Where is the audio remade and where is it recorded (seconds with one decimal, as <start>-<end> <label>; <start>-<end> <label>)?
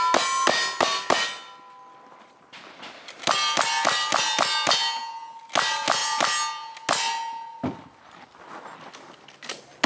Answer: 0.0-9.9 recorded